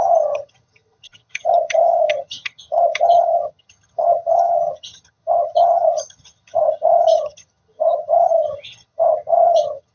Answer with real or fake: fake